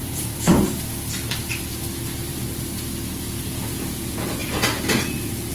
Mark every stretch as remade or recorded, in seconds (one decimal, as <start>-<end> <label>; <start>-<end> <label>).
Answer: 0.0-0.5 remade; 0.5-3.2 recorded; 3.2-5.5 remade